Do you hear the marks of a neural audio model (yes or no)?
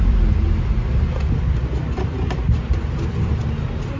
no